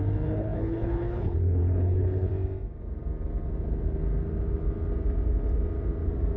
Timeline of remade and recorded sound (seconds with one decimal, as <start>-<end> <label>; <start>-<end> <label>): 0.0-2.3 remade; 2.3-6.4 recorded